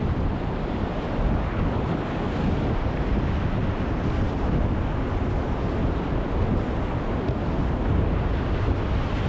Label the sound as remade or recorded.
recorded